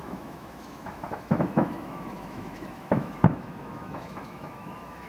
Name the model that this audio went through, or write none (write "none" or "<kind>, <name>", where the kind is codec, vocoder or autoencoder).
autoencoder, DAC-VAE